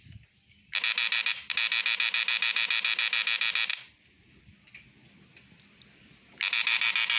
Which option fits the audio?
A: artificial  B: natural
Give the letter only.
B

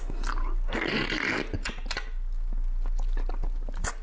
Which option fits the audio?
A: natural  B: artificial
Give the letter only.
A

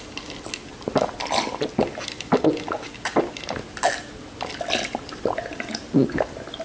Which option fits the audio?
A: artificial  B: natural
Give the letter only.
B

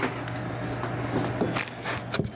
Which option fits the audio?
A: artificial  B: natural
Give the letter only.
B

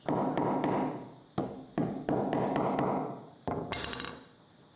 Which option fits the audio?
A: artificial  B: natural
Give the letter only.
B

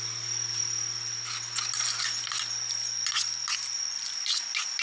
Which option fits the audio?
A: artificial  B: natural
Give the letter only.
B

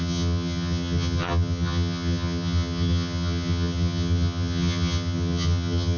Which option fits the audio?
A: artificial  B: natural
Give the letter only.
A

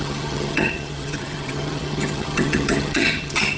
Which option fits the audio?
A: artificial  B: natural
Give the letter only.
A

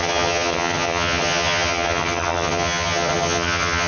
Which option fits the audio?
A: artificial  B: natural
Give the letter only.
A